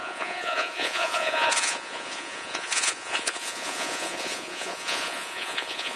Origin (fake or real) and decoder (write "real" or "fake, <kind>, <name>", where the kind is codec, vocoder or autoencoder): fake, vocoder, Vocos